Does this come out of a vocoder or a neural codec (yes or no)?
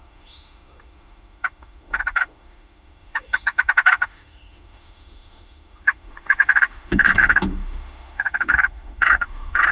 yes